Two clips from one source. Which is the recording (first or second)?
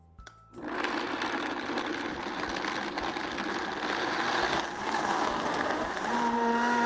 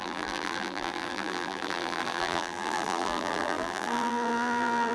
first